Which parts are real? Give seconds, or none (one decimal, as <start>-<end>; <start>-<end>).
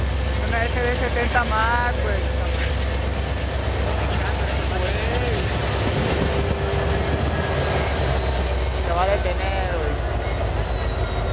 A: 0.0-11.3